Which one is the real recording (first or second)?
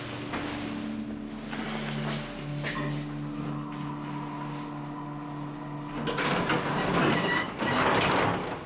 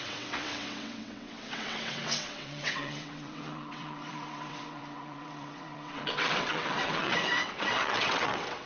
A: first